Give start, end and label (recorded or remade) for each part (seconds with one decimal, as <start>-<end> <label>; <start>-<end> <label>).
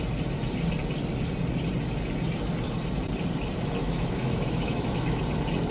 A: 0.0-3.8 recorded; 3.8-5.2 remade; 5.2-5.7 recorded